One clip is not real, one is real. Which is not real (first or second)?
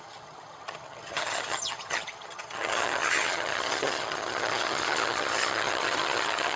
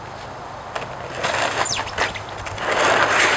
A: first